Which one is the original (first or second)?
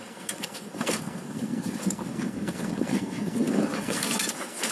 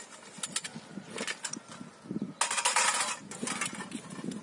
second